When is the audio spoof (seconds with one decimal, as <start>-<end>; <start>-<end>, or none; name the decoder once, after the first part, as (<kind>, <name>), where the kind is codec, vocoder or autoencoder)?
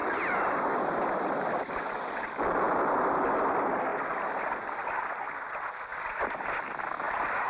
0.0-1.7 (vocoder, BigVGAN v2)